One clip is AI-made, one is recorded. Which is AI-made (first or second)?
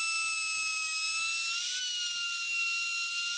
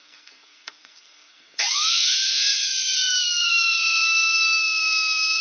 second